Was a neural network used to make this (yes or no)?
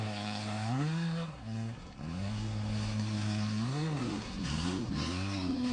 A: yes